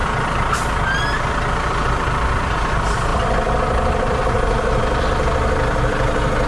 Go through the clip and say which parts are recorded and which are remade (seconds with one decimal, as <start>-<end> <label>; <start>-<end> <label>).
0.0-0.5 remade; 0.5-3.1 recorded; 3.1-5.0 remade; 5.0-6.5 recorded